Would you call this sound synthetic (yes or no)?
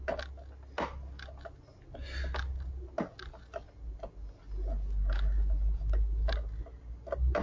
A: no